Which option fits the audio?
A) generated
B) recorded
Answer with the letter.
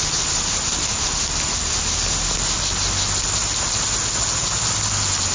B